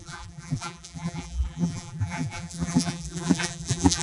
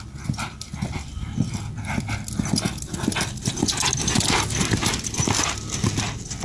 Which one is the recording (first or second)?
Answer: second